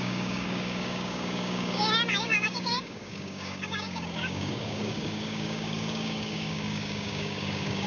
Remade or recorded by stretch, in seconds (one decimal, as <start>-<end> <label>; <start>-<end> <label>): 0.0-7.9 remade

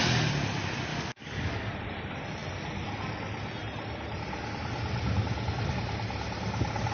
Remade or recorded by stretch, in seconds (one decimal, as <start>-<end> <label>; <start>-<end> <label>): 0.0-0.9 recorded; 0.9-1.7 remade; 1.7-6.9 recorded

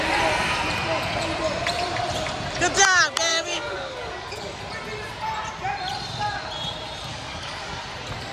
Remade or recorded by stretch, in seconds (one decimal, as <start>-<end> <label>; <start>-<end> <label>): 0.0-3.3 recorded; 3.3-4.6 remade; 4.6-7.1 recorded; 7.1-7.8 remade; 7.8-8.3 recorded

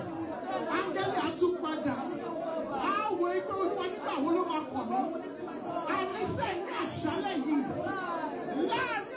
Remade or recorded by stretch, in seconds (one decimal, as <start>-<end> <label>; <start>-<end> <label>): 0.0-6.1 recorded; 6.1-6.8 remade; 6.8-9.2 recorded

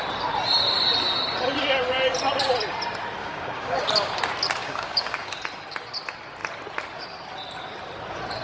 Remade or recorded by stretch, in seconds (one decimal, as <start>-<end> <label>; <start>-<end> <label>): 0.0-3.2 recorded; 3.2-3.8 remade; 3.8-4.6 recorded; 4.6-5.4 remade; 5.4-8.4 recorded

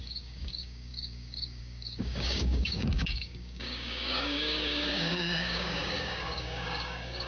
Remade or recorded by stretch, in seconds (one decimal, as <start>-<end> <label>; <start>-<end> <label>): 0.0-7.3 remade

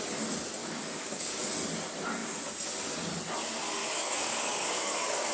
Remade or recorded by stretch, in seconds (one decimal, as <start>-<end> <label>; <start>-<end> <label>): 0.0-0.6 recorded; 0.6-1.5 remade; 1.5-3.8 recorded; 3.8-5.3 remade

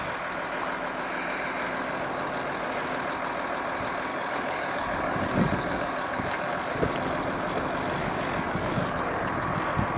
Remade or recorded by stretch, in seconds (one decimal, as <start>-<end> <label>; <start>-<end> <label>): 0.0-4.1 recorded; 4.1-6.5 remade; 6.5-8.0 recorded; 8.0-9.2 remade; 9.2-10.0 recorded